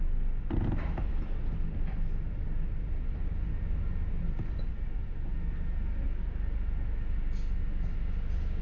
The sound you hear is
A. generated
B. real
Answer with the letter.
B